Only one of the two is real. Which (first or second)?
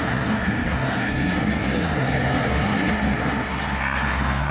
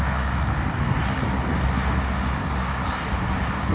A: second